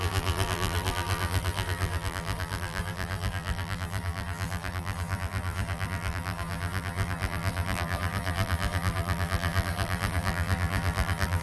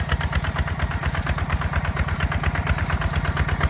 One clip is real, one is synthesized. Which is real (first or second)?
second